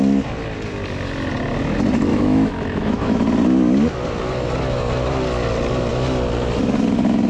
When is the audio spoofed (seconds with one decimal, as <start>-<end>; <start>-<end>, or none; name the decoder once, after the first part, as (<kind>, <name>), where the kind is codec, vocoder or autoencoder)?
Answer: 2.1-3.2 (autoencoder, DAC-VAE)